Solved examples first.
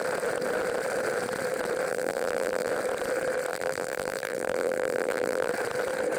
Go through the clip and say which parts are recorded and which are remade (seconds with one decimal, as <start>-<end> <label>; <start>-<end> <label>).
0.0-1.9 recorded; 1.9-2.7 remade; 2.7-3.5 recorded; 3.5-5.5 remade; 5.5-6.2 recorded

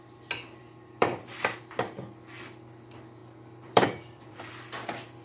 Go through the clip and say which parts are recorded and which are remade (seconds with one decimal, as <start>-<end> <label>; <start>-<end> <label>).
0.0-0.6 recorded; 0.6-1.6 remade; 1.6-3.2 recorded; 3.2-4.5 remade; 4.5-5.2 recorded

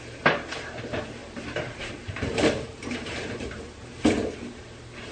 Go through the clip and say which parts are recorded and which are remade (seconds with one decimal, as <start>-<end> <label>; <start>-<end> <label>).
0.0-1.2 recorded; 1.2-4.3 remade; 4.3-5.1 recorded

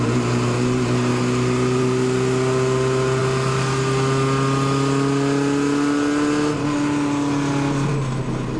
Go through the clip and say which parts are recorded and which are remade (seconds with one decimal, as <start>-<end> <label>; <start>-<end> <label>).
0.0-8.6 recorded